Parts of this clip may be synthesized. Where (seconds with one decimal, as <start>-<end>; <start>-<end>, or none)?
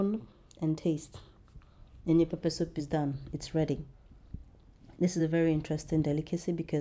1.8-2.8